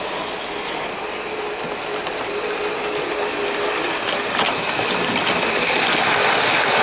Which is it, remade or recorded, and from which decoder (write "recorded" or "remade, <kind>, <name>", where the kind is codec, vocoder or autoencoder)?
recorded